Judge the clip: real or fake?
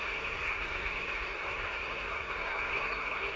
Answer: fake